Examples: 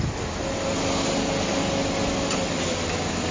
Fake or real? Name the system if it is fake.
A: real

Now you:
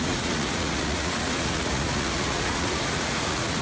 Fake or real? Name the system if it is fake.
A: fake, vocoder, Vocos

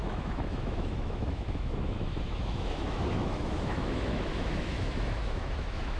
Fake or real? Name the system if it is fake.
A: fake, autoencoder, DAC-VAE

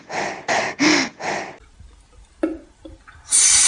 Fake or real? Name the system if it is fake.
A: real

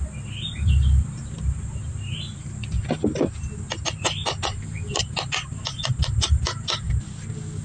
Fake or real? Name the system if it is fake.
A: real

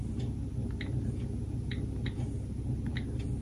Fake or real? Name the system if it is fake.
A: real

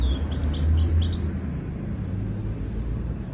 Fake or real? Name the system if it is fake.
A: real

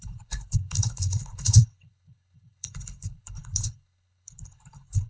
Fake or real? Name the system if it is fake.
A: fake, codec, HILCodec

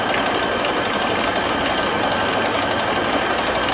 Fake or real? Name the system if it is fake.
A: real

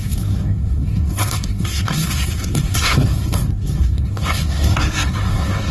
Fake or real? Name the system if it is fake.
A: fake, codec, SNAC